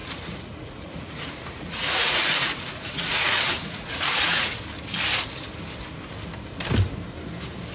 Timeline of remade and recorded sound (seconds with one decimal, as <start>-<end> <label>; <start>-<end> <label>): 0.0-4.6 remade; 4.6-7.7 recorded